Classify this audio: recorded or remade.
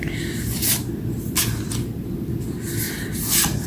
recorded